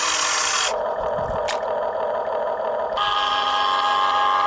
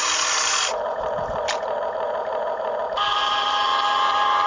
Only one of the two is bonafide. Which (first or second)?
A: first